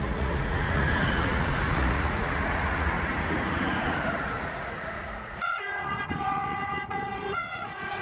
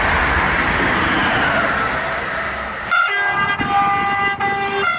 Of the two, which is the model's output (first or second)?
first